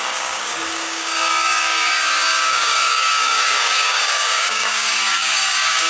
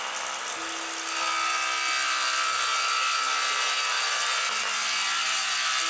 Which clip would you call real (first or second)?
second